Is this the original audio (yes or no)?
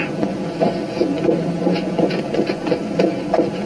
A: no